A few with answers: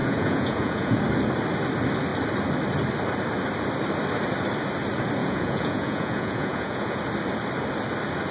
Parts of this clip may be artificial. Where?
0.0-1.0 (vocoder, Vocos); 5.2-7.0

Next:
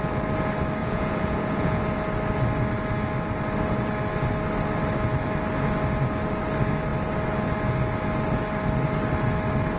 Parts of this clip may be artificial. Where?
0.8-1.8 (vocoder, Vocos)

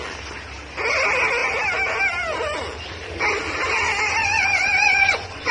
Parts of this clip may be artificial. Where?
4.2-5.5 (vocoder, Vocos)